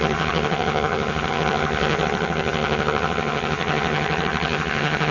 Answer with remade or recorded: remade